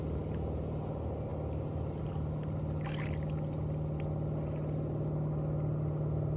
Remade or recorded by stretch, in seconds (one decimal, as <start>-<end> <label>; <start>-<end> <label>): 0.0-6.4 recorded